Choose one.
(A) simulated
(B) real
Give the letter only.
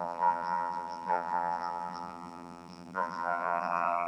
A